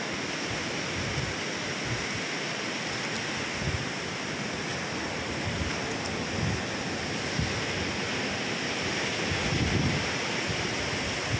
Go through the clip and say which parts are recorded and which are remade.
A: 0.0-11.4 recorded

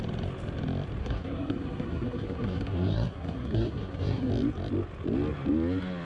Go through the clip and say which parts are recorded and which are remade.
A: 0.0-1.0 recorded; 1.0-4.3 remade; 4.3-6.0 recorded

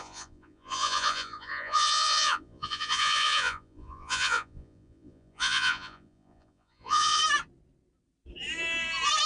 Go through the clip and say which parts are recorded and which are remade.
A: 0.0-7.2 remade; 7.2-9.3 recorded

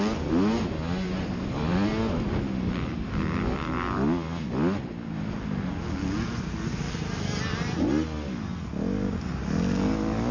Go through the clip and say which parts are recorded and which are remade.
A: 0.0-10.3 recorded

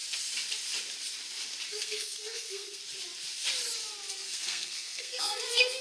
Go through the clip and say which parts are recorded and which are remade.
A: 0.0-1.7 recorded; 1.7-2.8 remade; 2.8-4.1 recorded; 4.1-5.8 remade

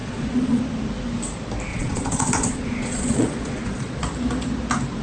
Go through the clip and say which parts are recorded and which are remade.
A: 0.0-0.6 remade; 0.6-1.7 recorded; 1.7-4.0 remade; 4.0-5.0 recorded

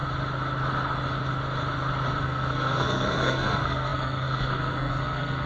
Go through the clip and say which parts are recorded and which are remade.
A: 0.0-2.2 recorded; 2.2-5.5 remade

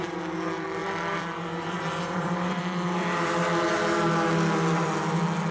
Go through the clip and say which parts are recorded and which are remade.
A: 0.0-0.8 recorded; 0.8-4.1 remade; 4.1-5.5 recorded